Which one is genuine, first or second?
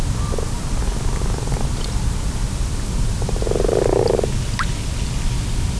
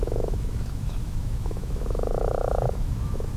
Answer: first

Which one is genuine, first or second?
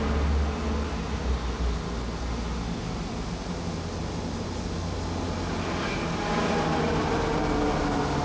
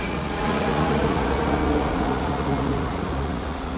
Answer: first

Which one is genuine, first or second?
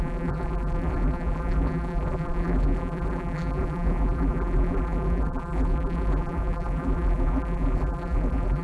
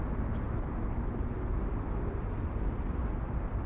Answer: second